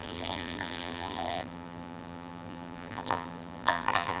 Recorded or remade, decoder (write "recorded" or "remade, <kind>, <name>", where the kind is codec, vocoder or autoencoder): remade, vocoder, BigVGAN v2